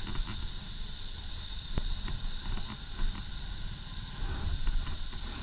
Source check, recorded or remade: recorded